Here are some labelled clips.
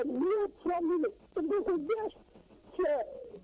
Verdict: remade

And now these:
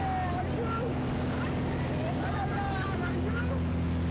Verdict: recorded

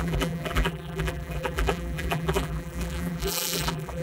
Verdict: remade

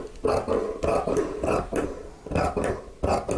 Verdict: recorded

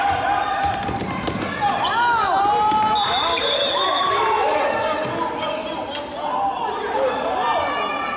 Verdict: recorded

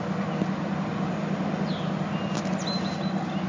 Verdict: recorded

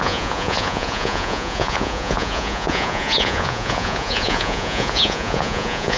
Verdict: remade